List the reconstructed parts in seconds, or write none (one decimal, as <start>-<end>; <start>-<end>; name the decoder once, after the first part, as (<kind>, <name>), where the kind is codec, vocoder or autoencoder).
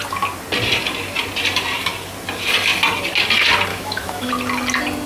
3.7-4.3 (autoencoder, DAC-VAE)